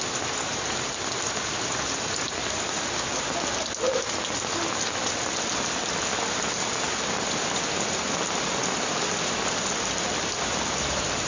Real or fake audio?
real